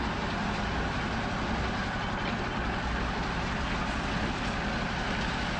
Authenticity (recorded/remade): recorded